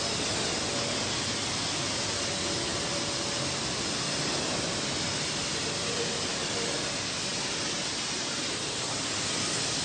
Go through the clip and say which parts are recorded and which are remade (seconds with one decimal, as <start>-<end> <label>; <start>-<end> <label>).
0.0-9.8 recorded